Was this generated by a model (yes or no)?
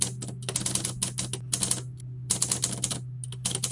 no